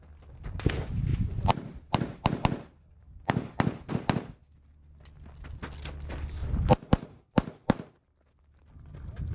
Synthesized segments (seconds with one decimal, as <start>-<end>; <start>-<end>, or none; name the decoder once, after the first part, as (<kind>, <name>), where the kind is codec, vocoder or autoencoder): 1.1-3.9 (vocoder, BigVGAN v2); 6.4-7.9